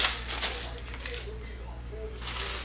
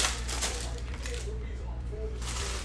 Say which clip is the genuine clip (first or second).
first